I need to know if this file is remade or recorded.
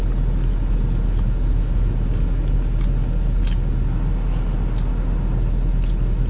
recorded